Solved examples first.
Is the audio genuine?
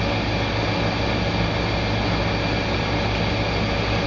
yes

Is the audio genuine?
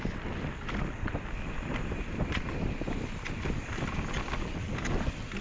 yes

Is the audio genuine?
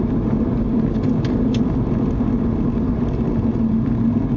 yes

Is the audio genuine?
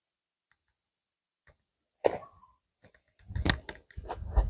yes